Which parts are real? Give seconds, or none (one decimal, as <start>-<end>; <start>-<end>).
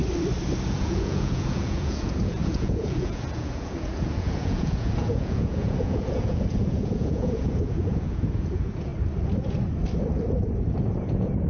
0.0-0.7; 8.9-11.0